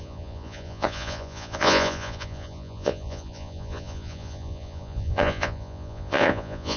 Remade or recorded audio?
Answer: remade